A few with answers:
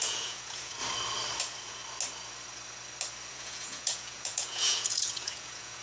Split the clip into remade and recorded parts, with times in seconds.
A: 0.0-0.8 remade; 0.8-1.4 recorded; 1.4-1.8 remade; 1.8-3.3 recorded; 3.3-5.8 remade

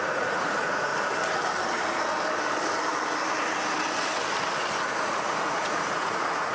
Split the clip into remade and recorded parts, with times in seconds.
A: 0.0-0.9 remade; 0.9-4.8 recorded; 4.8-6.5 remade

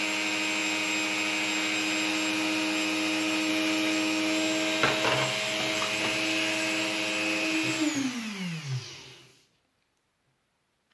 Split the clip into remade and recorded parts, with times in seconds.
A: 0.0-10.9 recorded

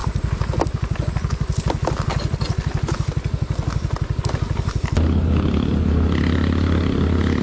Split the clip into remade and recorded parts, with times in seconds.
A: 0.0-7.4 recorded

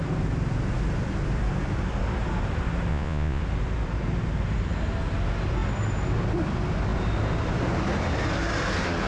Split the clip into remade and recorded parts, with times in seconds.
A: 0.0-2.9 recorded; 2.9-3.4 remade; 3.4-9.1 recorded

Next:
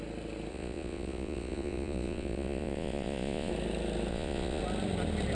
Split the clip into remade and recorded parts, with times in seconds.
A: 0.0-0.5 recorded; 0.5-3.5 remade; 3.5-4.1 recorded; 4.1-4.6 remade; 4.6-5.3 recorded